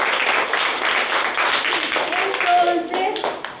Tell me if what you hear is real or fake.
real